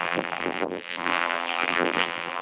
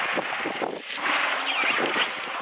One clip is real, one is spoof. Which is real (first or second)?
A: second